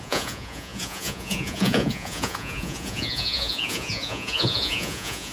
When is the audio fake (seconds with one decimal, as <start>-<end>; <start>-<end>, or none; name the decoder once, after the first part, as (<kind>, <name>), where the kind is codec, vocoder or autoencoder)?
0.0-5.3 (vocoder, Vocos)